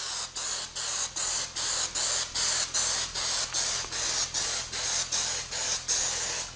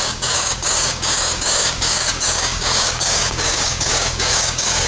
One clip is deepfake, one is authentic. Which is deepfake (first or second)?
second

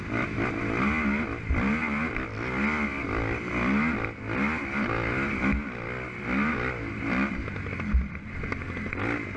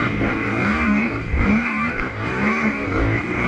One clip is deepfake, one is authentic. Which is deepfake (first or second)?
second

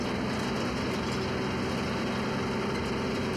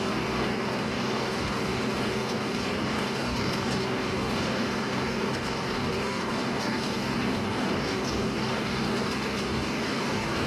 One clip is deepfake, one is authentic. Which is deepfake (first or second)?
second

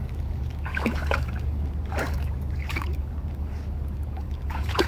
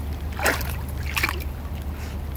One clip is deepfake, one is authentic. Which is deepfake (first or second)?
first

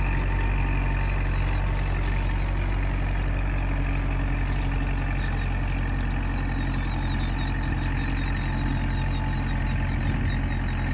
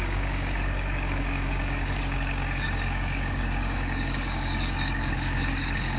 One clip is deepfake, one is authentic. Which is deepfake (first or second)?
second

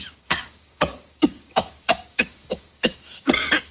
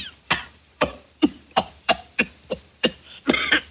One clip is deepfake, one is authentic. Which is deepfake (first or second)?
first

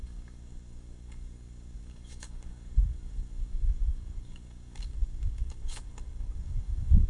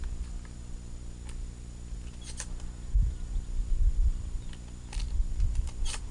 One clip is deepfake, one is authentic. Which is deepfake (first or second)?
first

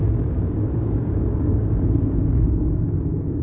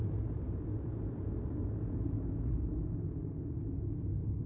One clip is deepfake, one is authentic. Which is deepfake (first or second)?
first